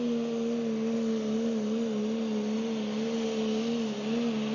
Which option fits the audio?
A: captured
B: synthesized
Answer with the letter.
A